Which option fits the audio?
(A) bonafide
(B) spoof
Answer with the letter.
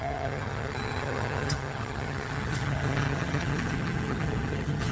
B